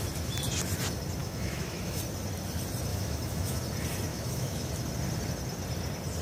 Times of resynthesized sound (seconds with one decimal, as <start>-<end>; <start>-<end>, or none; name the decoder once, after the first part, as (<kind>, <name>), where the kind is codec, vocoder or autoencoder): 1.2-2.0 (autoencoder, DAC-VAE); 2.9-3.6; 4.1-4.7